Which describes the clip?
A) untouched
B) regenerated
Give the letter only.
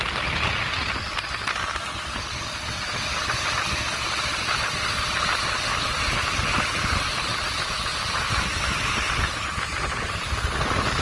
A